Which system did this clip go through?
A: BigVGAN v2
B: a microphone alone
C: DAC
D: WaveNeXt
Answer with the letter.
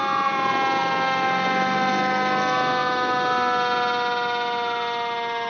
B